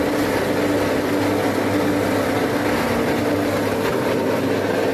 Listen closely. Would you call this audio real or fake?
real